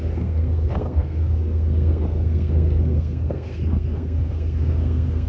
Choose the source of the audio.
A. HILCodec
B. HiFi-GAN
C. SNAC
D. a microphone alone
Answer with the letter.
C